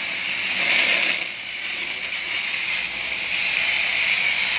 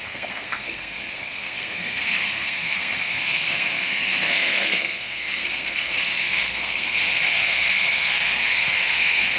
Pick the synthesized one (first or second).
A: second